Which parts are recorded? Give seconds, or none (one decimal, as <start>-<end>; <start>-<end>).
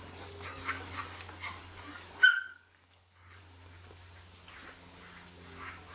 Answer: 1.0-1.6; 3.4-5.9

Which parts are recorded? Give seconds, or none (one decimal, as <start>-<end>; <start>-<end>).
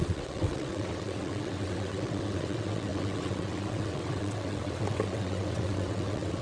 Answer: none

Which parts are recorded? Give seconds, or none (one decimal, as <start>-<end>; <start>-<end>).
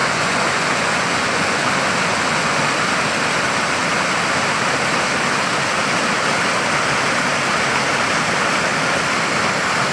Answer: 1.7-2.1; 2.6-9.9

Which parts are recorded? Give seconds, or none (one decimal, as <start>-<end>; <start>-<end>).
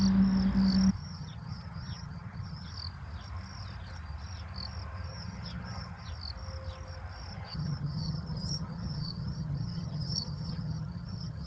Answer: 0.0-1.0; 2.7-5.1; 6.1-7.3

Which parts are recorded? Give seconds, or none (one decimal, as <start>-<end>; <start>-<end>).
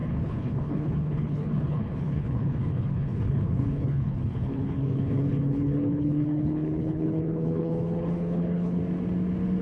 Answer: 8.8-9.6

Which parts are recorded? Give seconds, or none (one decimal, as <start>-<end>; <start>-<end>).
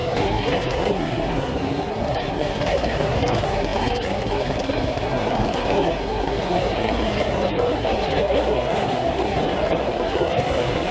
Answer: none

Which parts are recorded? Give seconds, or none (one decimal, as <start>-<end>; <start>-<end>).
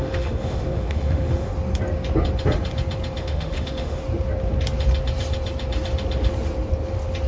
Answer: 1.5-3.2; 4.0-7.3